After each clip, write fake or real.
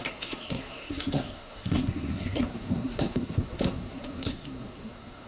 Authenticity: fake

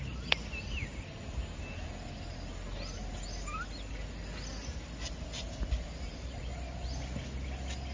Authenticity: real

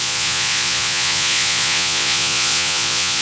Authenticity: fake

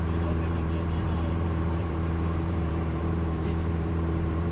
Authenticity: fake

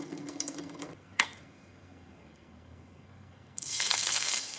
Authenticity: fake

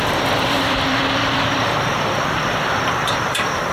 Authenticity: fake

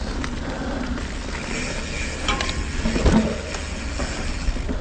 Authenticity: real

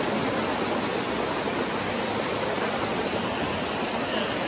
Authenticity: real